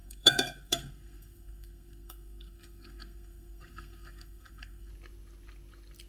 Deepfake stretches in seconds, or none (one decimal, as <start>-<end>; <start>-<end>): 0.0-4.9